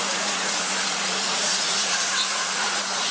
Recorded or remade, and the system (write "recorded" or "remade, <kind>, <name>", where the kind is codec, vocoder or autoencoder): remade, vocoder, Vocos